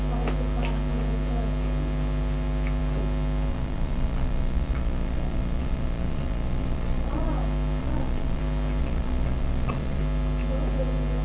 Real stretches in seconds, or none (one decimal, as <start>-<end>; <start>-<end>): 0.0-3.5; 7.3-7.8; 8.4-8.8; 10.0-11.2